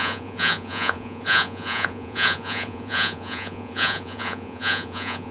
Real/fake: fake